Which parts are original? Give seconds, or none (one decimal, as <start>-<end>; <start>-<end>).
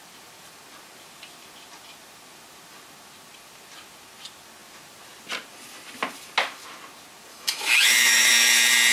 0.0-7.3; 8.3-8.9